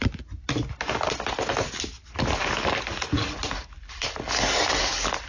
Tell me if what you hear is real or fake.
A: real